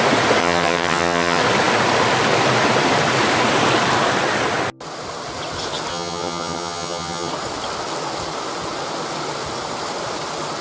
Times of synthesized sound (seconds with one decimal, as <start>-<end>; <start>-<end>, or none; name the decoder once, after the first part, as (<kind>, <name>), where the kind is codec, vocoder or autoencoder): 0.4-1.4 (vocoder, HiFi-GAN); 5.9-7.3